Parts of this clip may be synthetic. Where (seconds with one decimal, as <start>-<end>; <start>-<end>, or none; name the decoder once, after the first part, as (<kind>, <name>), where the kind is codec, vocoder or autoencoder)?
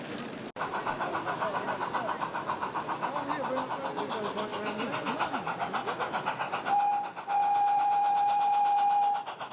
none